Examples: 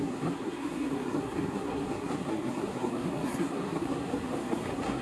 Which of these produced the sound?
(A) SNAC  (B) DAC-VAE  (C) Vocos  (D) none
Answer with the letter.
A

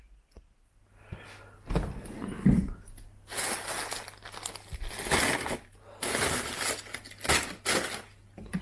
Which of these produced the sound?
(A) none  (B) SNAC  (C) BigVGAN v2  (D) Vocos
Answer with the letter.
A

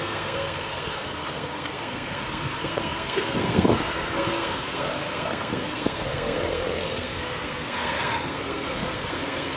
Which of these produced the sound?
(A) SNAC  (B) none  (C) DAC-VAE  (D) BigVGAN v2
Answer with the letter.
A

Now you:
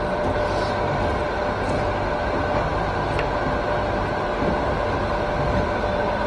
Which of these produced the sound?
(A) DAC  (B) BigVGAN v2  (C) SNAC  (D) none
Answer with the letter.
D